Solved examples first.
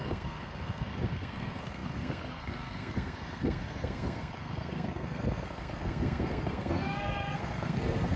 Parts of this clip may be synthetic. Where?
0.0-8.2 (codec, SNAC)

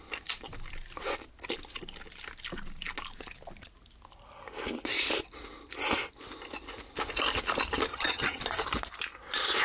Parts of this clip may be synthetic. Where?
7.9-8.4 (vocoder, HiFi-GAN)

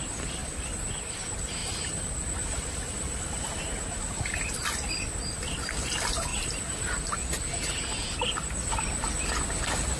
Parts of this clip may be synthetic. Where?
0.0-6.3 (vocoder, BigVGAN v2)

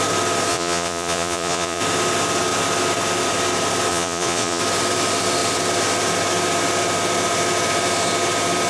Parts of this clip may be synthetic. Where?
0.5-1.8 (vocoder, Vocos); 3.9-4.6

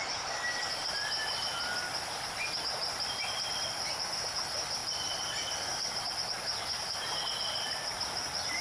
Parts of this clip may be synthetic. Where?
none

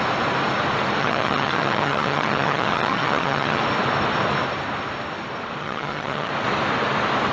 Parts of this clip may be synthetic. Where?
1.0-3.6 (vocoder, HiFi-GAN); 5.6-6.3